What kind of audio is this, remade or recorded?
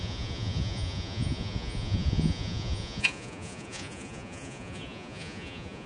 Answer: remade